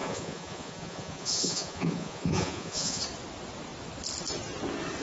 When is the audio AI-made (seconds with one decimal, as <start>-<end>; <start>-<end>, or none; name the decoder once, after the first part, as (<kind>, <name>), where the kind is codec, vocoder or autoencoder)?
0.0-3.0 (vocoder, Vocos)